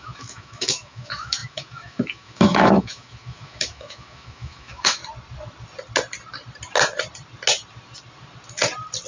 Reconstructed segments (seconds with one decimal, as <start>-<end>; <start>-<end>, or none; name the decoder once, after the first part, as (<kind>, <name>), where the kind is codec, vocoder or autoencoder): 0.0-5.0 (autoencoder, DAC-VAE)